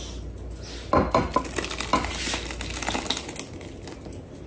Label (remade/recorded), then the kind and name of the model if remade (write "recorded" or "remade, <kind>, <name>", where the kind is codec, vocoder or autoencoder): recorded